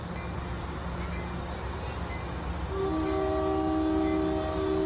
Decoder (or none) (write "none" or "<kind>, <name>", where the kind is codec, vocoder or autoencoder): none